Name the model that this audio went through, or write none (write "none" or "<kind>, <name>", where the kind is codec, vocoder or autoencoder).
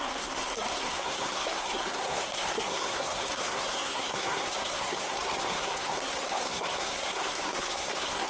codec, SNAC